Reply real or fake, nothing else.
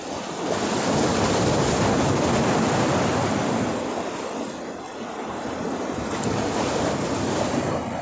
real